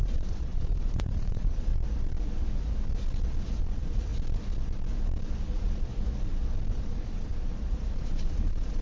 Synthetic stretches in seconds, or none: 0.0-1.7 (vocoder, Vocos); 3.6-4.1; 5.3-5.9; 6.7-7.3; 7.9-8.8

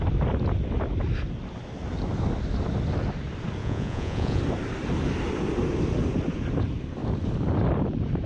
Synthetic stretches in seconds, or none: 3.6-4.4 (vocoder, Vocos)

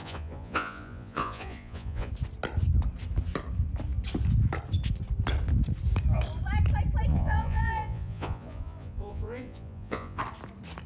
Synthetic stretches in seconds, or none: 0.0-2.1 (vocoder, Vocos); 7.1-10.2